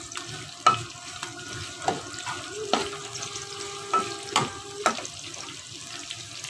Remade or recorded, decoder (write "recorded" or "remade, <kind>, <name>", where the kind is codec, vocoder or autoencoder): recorded